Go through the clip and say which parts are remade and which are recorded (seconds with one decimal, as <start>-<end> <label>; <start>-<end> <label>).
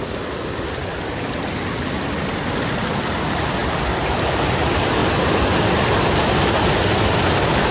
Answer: 0.0-7.7 recorded